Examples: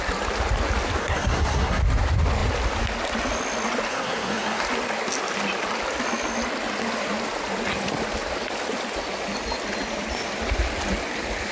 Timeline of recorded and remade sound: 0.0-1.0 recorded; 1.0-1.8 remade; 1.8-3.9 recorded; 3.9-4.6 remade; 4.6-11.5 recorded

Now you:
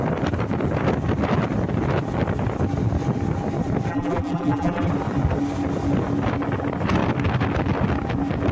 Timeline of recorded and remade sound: 0.0-3.9 recorded; 3.9-4.9 remade; 4.9-8.5 recorded